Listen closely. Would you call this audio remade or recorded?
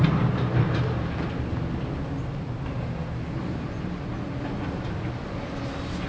recorded